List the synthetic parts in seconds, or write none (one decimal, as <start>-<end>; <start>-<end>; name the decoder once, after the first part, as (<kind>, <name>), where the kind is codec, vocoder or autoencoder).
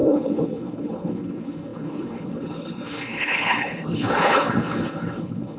0.0-5.6 (codec, HILCodec)